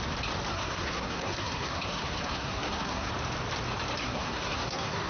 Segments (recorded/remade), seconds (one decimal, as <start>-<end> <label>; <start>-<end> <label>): 0.0-0.5 recorded; 0.5-3.1 remade; 3.1-4.0 recorded; 4.0-5.1 remade